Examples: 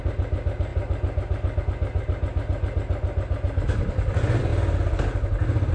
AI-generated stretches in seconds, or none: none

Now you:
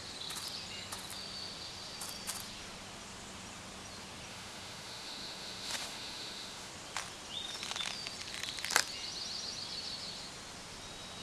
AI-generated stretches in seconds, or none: 4.3-6.7 (autoencoder, DAC-VAE)

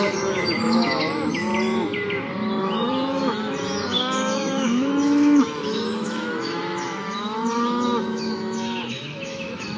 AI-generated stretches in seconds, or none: 0.0-1.5 (autoencoder, DAC-VAE); 2.6-9.8